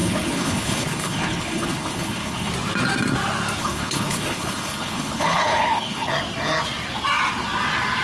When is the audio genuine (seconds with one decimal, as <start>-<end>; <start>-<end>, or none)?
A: 2.5-3.6; 6.1-8.0